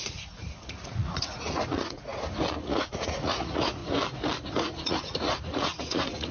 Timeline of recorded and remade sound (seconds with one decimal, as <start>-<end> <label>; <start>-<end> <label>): 0.0-2.1 remade; 2.1-2.6 recorded; 2.6-3.8 remade; 3.8-4.5 recorded; 4.5-6.3 remade